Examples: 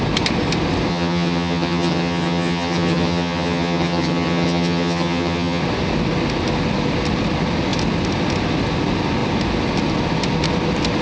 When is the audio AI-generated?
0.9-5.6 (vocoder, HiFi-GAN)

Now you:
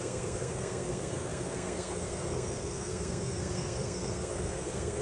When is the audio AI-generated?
0.0-5.0 (codec, SNAC)

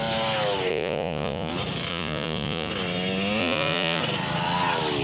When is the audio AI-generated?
0.7-1.5 (vocoder, Vocos); 1.9-2.7; 3.4-4.0

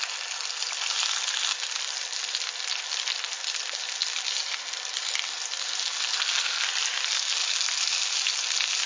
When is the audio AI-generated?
none

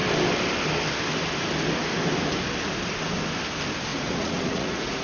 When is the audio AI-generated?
3.9-5.0 (vocoder, Vocos)

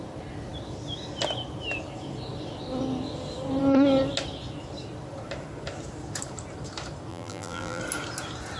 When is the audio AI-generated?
7.1-7.8 (vocoder, BigVGAN v2)

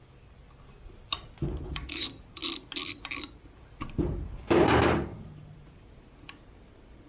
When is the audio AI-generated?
0.0-0.4 (vocoder, BigVGAN v2); 1.7-2.4; 3.4-7.1